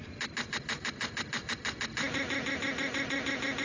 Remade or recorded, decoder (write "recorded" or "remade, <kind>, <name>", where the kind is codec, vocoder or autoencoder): recorded